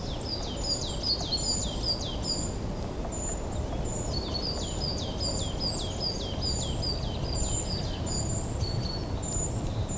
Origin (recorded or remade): recorded